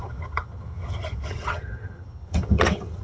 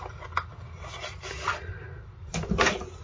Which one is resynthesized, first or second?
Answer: first